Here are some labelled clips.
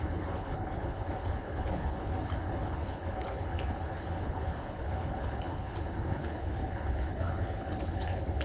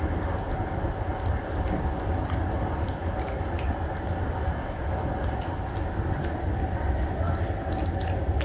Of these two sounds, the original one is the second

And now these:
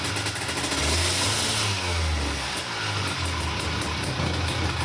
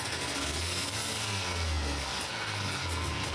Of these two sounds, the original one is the first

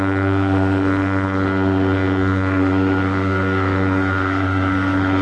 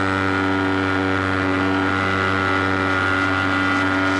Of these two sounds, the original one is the second